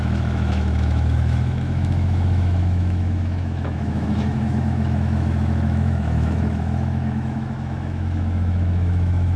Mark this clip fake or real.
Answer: fake